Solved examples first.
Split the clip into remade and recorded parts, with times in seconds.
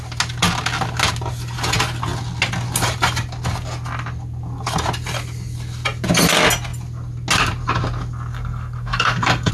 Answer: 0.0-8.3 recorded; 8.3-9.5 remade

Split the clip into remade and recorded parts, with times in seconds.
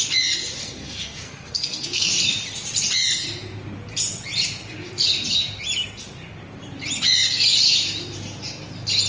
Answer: 0.0-0.6 recorded; 0.6-2.1 remade; 2.1-9.1 recorded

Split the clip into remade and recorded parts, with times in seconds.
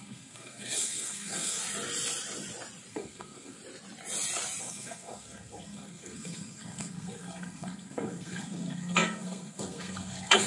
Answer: 0.0-1.6 remade; 1.6-2.9 recorded; 2.9-3.6 remade; 3.6-4.6 recorded; 4.6-10.5 remade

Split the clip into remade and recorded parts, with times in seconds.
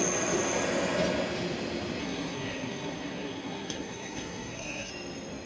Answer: 0.0-2.0 recorded; 2.0-4.9 remade; 4.9-5.5 recorded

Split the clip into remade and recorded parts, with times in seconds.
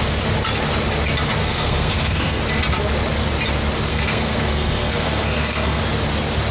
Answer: 0.0-1.4 recorded; 1.4-2.4 remade; 2.4-3.9 recorded; 3.9-5.8 remade; 5.8-6.5 recorded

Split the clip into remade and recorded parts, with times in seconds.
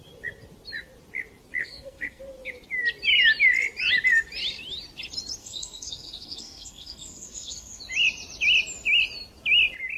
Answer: 0.0-1.6 recorded; 1.6-2.2 remade; 2.2-5.4 recorded; 5.4-7.8 remade; 7.8-10.0 recorded